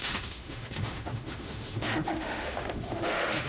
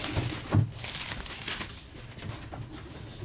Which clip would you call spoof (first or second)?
first